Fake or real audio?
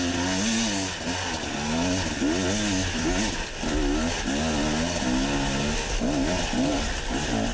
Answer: real